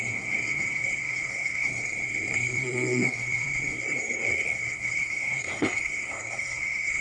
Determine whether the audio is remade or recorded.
remade